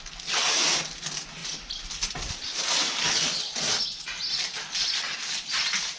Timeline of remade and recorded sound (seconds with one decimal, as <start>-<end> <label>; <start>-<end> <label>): 0.0-6.0 recorded